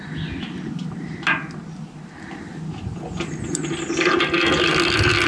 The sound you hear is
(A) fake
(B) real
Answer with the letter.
B